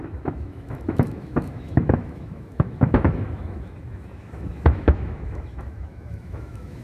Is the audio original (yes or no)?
no